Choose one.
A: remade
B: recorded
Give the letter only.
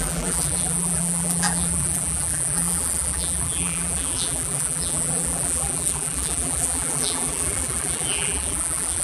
A